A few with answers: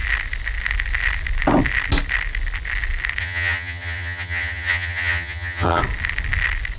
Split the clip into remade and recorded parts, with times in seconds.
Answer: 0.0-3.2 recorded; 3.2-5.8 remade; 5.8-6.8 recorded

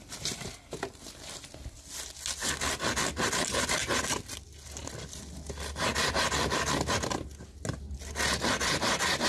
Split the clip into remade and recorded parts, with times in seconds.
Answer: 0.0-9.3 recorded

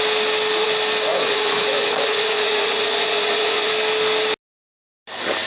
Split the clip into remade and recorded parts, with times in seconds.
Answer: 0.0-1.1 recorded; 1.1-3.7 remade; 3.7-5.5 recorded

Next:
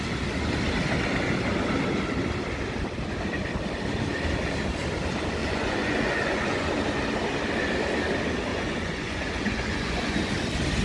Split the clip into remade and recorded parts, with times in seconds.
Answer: 0.0-5.4 recorded; 5.4-6.7 remade; 6.7-8.5 recorded; 8.5-10.3 remade; 10.3-10.8 recorded

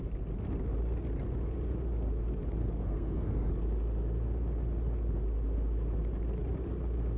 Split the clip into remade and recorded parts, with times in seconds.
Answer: 0.0-2.6 recorded; 2.6-3.5 remade; 3.5-7.2 recorded

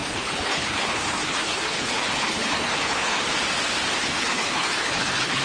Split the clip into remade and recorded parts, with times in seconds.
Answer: 0.0-3.2 remade; 3.2-4.0 recorded; 4.0-5.4 remade

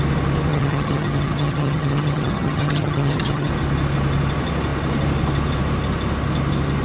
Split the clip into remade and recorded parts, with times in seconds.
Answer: 0.0-0.5 recorded; 0.5-3.5 remade; 3.5-6.8 recorded